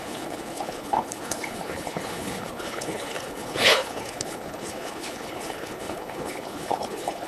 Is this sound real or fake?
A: fake